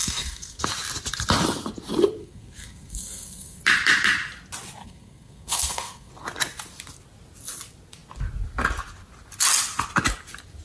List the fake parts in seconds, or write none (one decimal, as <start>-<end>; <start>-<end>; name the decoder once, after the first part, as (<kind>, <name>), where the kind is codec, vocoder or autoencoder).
0.0-0.6 (codec, SNAC); 2.2-3.6; 4.8-6.1